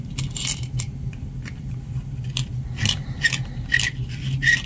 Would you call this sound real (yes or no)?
yes